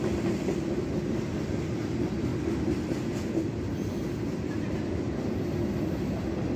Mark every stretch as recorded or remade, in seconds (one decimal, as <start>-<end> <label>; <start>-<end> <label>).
0.0-6.6 recorded